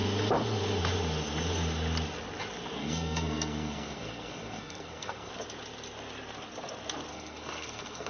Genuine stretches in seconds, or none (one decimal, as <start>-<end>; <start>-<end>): 0.0-2.8; 5.3-7.1